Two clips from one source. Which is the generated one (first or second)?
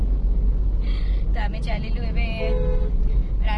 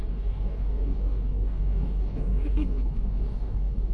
second